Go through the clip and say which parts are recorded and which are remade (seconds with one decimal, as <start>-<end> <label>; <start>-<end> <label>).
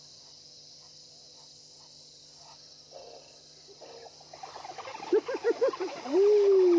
0.0-6.8 recorded